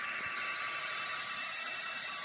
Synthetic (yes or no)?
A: no